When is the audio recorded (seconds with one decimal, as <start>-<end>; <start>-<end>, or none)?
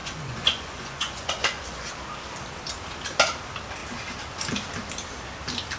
1.9-5.8